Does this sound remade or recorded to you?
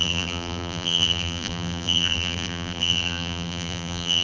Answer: remade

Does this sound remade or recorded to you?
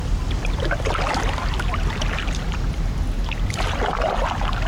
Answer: recorded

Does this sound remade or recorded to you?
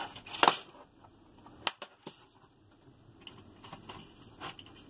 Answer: recorded